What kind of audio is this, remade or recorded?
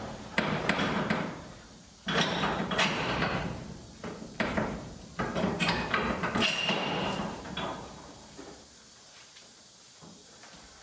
remade